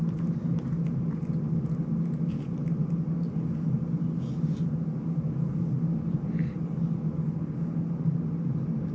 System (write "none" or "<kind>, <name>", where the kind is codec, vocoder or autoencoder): none